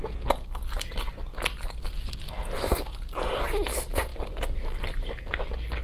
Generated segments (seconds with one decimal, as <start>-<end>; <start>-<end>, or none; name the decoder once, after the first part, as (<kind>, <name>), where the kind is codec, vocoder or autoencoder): 4.1-4.8 (vocoder, BigVGAN v2)